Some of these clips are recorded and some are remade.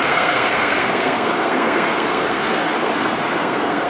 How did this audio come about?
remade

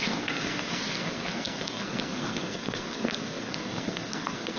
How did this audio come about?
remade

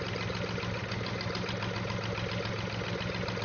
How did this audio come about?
recorded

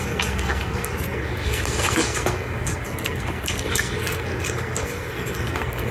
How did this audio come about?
remade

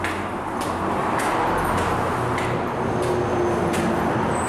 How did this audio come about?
recorded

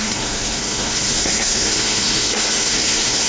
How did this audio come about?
remade